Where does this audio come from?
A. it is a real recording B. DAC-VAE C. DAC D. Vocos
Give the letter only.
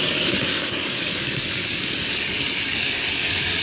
C